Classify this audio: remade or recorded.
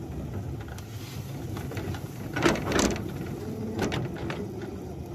recorded